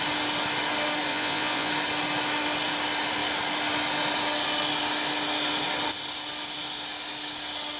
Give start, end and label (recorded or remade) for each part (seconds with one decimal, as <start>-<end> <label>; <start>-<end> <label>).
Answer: 0.0-1.1 recorded; 1.1-1.7 remade; 1.7-7.8 recorded